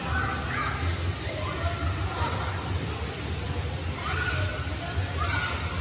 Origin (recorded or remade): recorded